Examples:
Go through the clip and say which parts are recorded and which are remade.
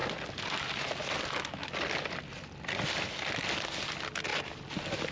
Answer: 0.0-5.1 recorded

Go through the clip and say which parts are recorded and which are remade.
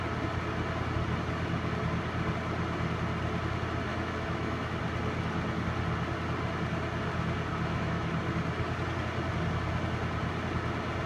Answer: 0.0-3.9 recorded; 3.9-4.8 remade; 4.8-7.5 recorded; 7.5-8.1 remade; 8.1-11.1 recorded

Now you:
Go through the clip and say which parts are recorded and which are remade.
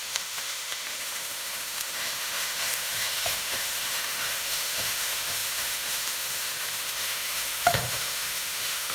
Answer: 0.0-8.9 remade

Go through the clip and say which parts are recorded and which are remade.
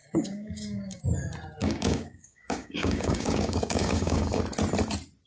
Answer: 0.0-1.0 remade; 1.0-1.6 recorded; 1.6-4.4 remade; 4.4-5.3 recorded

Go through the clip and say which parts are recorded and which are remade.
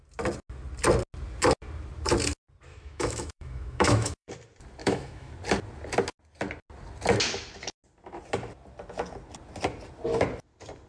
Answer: 0.0-2.7 recorded; 2.7-4.3 remade; 4.3-4.8 recorded; 4.8-5.3 remade; 5.3-10.9 recorded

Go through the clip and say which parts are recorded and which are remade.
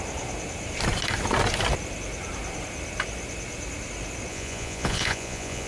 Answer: 0.0-4.3 recorded; 4.3-5.7 remade